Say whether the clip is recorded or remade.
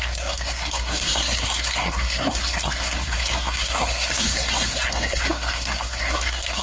remade